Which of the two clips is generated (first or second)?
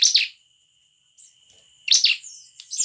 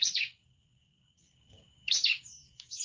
second